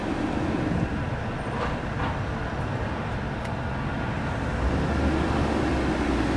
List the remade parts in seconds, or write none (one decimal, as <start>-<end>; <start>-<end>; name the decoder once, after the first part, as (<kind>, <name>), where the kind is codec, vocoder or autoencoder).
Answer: none